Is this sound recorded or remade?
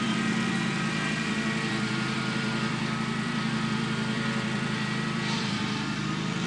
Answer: remade